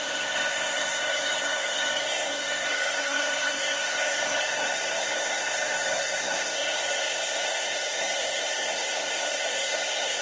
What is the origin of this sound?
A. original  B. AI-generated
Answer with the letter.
B